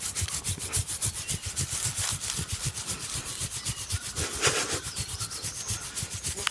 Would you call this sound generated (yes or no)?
no